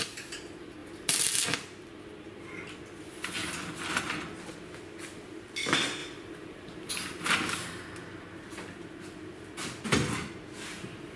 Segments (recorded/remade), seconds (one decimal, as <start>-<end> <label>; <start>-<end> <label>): 0.0-0.8 recorded; 0.8-1.3 remade; 1.3-6.0 recorded; 6.0-6.9 remade; 6.9-9.3 recorded; 9.3-9.8 remade; 9.8-11.2 recorded